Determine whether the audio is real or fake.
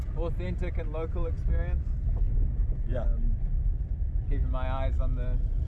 real